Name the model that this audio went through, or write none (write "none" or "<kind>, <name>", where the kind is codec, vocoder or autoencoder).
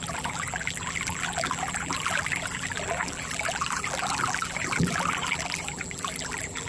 vocoder, BigVGAN v2